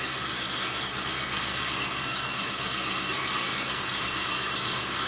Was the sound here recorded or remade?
remade